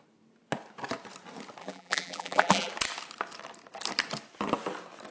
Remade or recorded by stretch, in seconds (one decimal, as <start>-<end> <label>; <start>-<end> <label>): 0.0-1.6 recorded; 1.6-2.7 remade; 2.7-5.1 recorded